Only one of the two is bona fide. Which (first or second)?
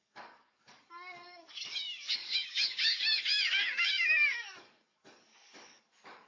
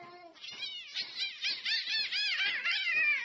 second